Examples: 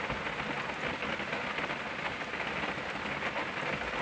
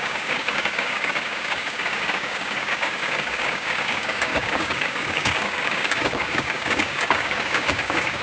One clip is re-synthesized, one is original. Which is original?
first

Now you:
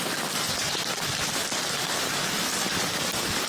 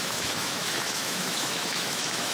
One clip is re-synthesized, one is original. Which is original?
first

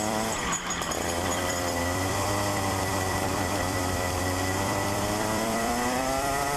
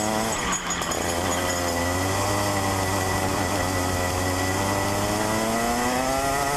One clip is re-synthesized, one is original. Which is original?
second